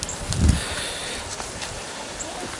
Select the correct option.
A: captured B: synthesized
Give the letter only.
A